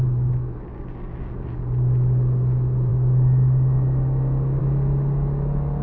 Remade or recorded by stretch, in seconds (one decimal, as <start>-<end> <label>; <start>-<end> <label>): 0.0-0.7 recorded; 0.7-1.6 remade; 1.6-5.8 recorded